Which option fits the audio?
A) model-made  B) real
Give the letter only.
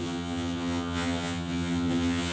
A